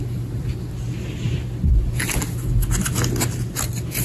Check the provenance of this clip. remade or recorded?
recorded